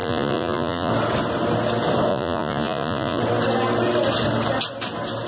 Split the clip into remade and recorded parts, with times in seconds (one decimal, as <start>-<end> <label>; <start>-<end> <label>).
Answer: 0.0-0.9 remade; 0.9-2.1 recorded; 2.1-3.2 remade; 3.2-5.3 recorded